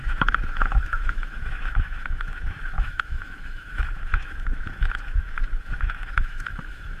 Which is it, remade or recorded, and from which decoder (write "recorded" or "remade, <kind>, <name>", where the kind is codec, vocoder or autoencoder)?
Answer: remade, autoencoder, DAC-VAE